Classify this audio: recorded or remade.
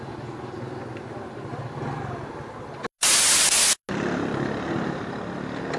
recorded